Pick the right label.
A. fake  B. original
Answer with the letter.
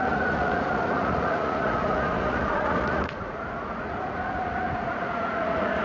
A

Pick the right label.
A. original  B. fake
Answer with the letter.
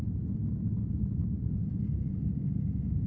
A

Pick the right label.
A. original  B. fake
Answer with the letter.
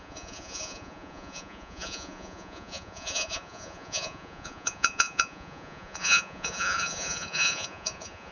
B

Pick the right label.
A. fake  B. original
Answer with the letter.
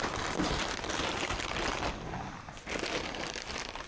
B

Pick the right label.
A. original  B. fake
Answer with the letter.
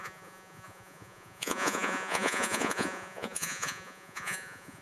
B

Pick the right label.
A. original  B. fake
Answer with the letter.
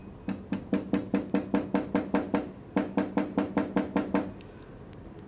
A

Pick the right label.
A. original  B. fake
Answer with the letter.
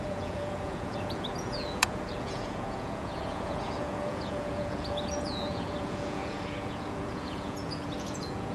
B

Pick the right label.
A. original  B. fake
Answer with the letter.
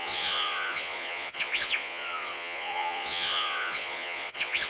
B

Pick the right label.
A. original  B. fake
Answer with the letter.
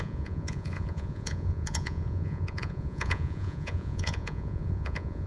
B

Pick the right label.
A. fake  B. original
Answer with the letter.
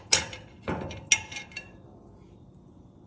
B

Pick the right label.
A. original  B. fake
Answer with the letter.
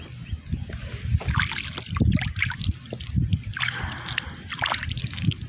A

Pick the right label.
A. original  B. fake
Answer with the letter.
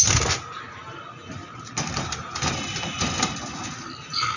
A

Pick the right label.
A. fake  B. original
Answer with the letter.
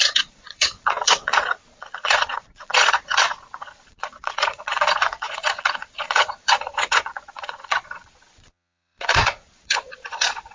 A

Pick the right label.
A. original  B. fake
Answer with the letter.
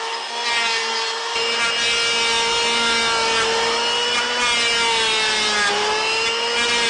A